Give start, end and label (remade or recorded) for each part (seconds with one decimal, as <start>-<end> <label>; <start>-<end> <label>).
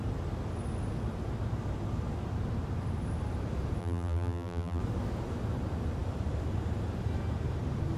0.0-3.8 recorded; 3.8-4.8 remade; 4.8-8.0 recorded